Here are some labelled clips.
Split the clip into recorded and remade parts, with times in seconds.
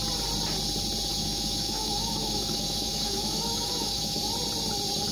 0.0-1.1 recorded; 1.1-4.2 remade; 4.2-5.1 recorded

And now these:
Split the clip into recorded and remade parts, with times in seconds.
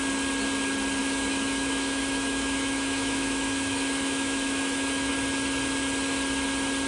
0.0-1.0 recorded; 1.0-5.1 remade; 5.1-6.9 recorded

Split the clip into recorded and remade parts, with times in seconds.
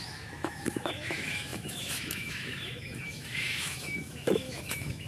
0.0-5.1 remade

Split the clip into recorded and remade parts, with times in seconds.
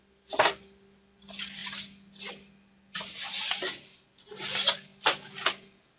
0.0-6.0 recorded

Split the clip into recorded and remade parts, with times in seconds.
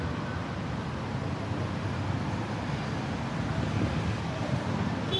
0.0-5.2 recorded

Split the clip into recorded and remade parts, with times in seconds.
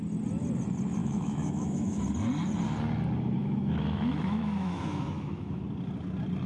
0.0-1.0 recorded; 1.0-2.0 remade; 2.0-3.4 recorded; 3.4-5.6 remade; 5.6-6.5 recorded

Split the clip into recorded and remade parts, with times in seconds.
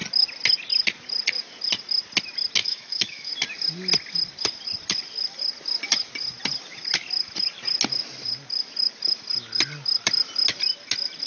0.0-2.6 recorded; 2.6-3.3 remade; 3.3-11.3 recorded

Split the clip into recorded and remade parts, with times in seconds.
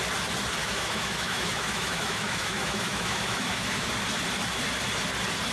0.0-0.6 recorded; 0.6-3.9 remade; 3.9-5.5 recorded